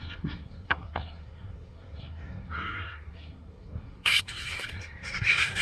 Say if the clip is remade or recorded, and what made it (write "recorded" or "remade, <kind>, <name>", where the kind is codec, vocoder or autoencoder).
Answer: remade, codec, SNAC